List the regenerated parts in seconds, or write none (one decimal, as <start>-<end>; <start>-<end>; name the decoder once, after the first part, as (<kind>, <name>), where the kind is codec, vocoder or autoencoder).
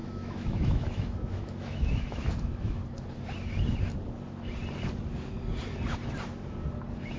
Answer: 0.0-2.8 (autoencoder, DAC-VAE)